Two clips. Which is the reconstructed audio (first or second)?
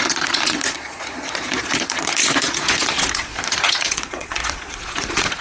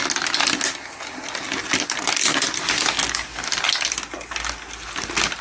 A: first